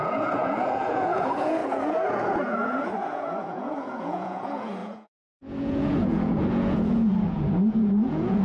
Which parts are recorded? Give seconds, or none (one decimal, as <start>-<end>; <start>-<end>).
none